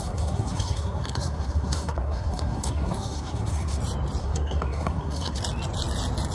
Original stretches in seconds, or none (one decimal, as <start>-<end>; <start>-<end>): 3.8-4.2; 5.4-6.3